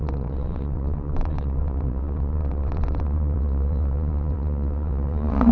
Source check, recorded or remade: remade